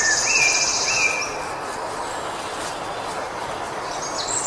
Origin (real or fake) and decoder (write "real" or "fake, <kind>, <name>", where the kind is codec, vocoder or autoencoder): real